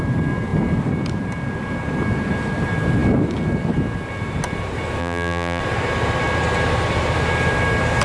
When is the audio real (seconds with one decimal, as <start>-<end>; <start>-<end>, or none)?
0.0-5.0; 5.6-8.0